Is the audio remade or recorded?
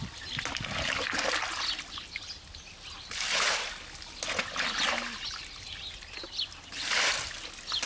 recorded